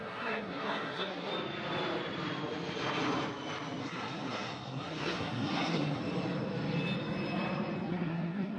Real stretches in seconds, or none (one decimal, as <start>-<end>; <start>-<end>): 1.3-3.8; 6.0-7.9